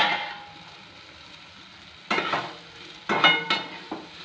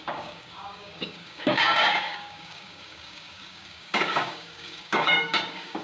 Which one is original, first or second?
first